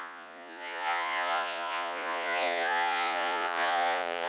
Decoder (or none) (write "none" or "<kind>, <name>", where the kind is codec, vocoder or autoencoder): vocoder, Vocos